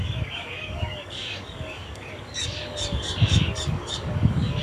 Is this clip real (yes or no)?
no